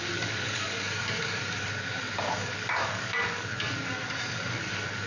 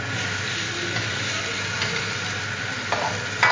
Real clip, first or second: second